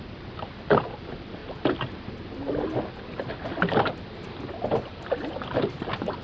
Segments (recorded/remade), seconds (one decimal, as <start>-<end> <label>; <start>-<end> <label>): 0.0-6.2 recorded